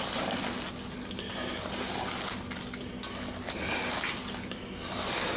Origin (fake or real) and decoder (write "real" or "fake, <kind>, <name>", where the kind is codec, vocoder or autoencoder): real